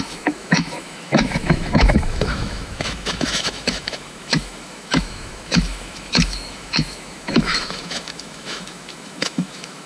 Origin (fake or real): fake